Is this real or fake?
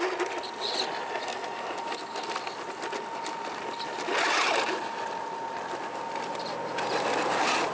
real